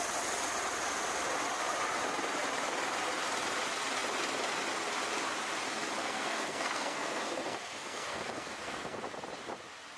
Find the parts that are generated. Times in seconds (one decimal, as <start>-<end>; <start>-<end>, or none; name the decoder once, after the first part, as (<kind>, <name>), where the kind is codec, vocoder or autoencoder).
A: 6.0-9.0 (codec, SNAC)